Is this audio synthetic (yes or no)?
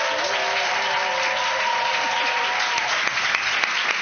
no